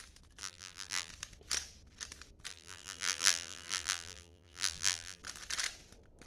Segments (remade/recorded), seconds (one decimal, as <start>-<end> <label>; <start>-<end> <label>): 0.0-0.4 recorded; 0.4-1.1 remade; 1.1-2.5 recorded; 2.5-5.2 remade; 5.2-6.3 recorded